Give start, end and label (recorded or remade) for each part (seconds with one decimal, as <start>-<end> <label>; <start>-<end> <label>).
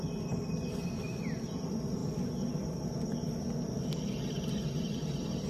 0.0-5.5 recorded